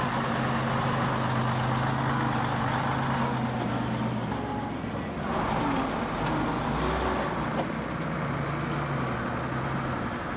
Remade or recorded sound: recorded